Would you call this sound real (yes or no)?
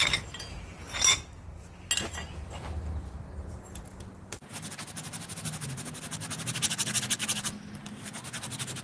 yes